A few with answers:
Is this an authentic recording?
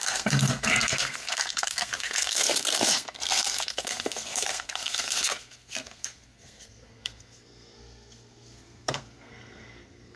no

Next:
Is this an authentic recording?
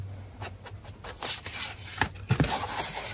yes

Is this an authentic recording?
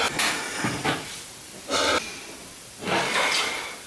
yes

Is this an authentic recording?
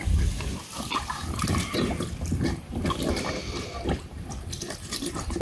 yes